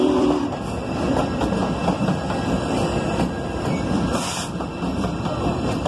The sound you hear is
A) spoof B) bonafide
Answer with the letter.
A